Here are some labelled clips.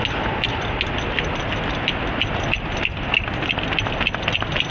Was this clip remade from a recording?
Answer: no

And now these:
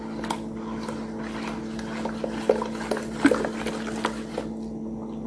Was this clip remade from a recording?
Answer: no